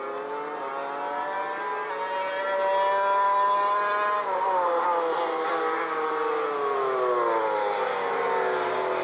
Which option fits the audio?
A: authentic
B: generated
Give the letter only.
A